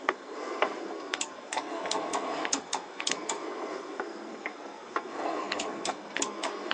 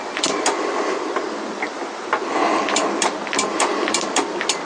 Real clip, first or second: second